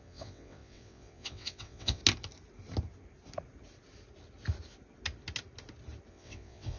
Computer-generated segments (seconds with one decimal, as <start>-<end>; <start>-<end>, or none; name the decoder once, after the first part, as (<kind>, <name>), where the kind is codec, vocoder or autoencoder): 0.0-2.0 (vocoder, WaveNeXt); 6.1-6.8